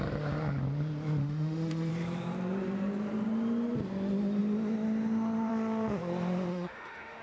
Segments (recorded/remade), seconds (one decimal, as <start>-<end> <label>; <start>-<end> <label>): 0.0-1.2 recorded; 1.2-1.9 remade; 1.9-6.5 recorded; 6.5-7.2 remade

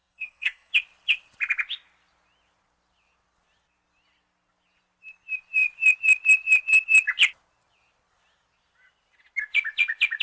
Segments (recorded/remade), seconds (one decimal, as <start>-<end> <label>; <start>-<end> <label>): 0.0-0.7 remade; 0.7-10.2 recorded

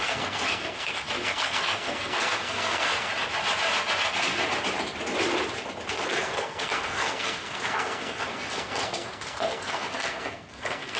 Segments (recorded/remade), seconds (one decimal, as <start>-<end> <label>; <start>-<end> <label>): 0.0-3.1 remade; 3.1-5.9 recorded; 5.9-11.0 remade